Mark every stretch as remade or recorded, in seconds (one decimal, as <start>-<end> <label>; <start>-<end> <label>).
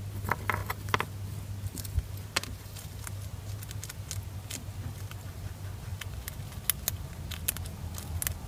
0.0-8.5 recorded